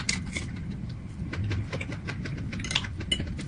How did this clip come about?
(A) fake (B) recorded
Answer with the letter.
B